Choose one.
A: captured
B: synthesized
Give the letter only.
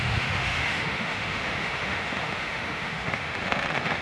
B